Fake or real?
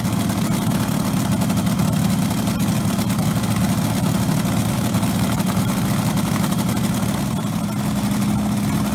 real